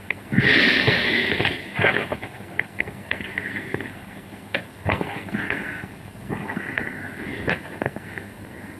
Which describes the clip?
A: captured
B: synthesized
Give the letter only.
B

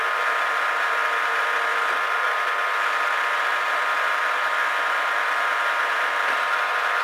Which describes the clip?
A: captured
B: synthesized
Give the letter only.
A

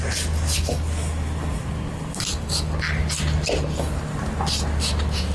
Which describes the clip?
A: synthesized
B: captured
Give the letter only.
B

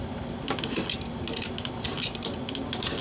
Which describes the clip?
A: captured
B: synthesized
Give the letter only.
A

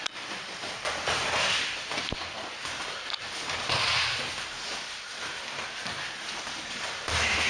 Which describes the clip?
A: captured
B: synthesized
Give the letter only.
A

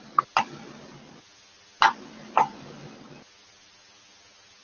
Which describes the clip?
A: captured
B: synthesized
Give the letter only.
A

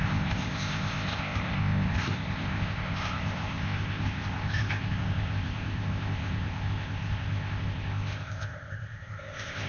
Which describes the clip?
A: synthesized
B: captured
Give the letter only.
A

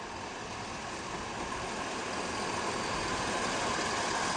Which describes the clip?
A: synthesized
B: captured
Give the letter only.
B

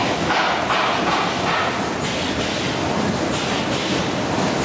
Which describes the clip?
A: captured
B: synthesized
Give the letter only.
A